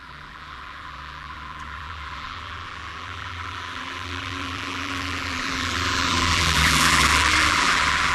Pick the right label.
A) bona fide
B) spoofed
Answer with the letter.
B